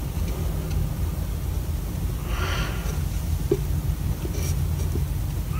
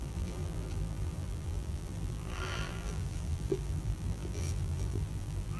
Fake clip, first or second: second